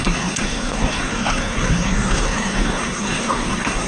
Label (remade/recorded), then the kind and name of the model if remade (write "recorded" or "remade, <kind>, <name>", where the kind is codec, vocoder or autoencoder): remade, codec, SNAC